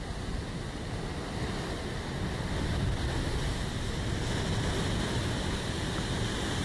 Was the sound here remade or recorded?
recorded